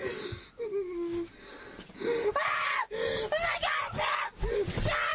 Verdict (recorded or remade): recorded